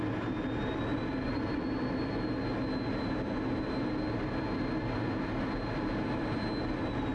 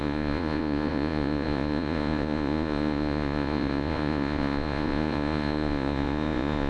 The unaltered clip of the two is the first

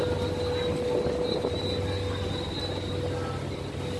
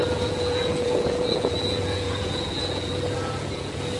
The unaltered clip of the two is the first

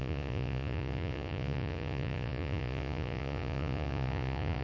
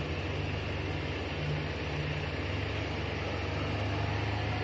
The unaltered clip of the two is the second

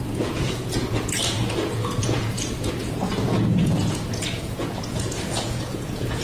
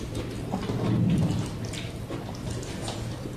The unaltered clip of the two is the second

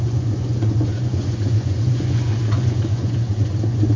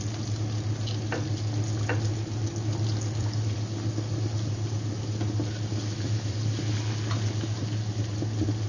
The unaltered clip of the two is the second